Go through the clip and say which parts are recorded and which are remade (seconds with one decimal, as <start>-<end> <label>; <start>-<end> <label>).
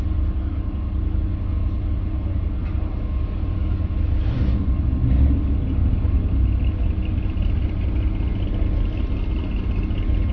0.0-10.3 recorded